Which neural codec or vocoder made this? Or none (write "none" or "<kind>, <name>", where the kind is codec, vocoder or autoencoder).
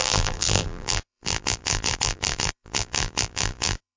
vocoder, BigVGAN v2